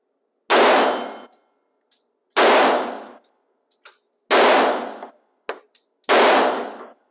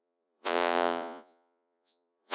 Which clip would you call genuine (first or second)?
first